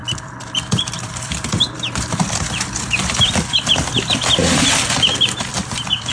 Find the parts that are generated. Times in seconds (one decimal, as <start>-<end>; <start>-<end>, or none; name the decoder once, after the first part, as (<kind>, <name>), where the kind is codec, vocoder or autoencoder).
0.0-3.0 (vocoder, BigVGAN v2); 5.5-6.1